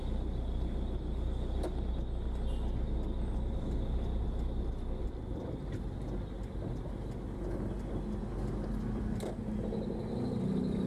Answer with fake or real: real